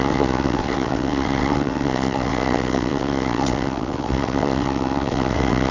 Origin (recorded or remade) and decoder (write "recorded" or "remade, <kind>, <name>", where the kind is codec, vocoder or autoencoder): remade, vocoder, WaveNeXt